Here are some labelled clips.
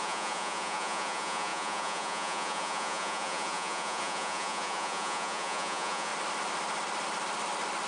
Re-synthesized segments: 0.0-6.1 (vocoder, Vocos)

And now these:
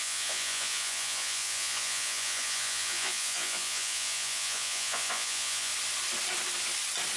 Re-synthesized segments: 0.0-5.7 (vocoder, Vocos)

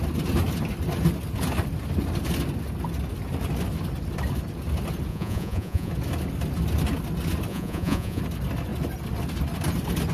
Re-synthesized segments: 5.1-5.9 (vocoder, Vocos); 7.5-8.2